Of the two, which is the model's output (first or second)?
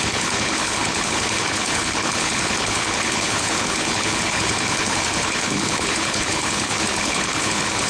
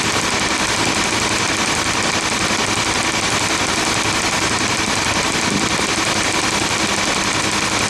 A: first